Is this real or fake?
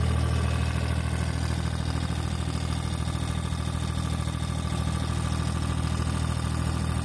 real